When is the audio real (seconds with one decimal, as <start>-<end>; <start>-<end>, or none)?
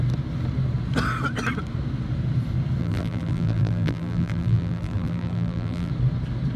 0.0-2.8; 5.9-6.6